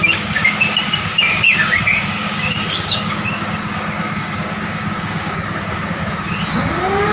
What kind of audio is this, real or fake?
fake